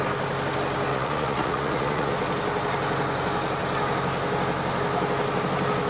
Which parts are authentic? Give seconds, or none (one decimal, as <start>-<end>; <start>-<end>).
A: 0.0-0.9; 2.1-5.9